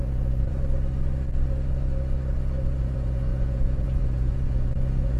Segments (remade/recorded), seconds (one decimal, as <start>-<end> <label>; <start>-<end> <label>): 0.0-0.5 remade; 0.5-2.8 recorded; 2.8-5.2 remade